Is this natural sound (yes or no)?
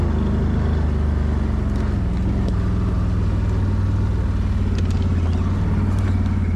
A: yes